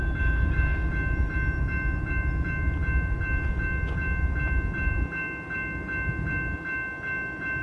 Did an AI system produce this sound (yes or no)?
no